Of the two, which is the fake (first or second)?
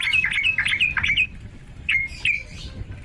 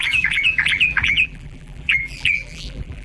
second